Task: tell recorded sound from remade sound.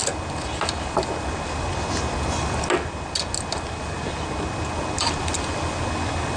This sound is recorded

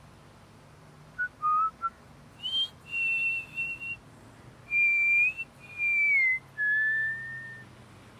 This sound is recorded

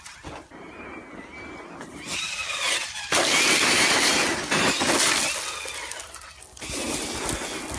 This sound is recorded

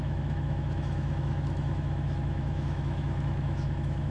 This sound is remade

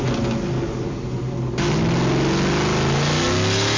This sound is recorded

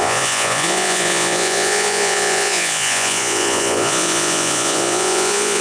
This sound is remade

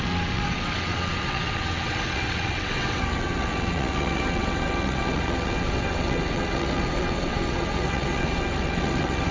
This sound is remade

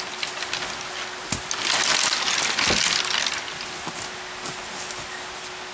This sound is recorded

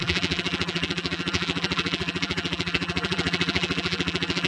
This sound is remade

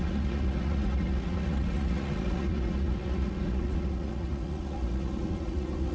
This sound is remade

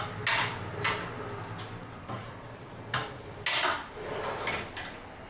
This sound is recorded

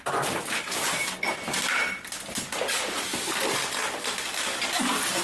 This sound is recorded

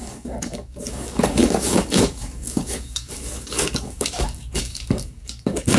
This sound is remade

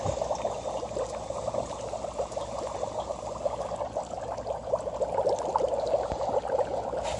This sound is recorded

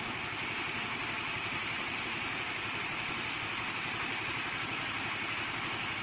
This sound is recorded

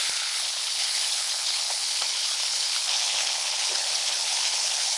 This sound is remade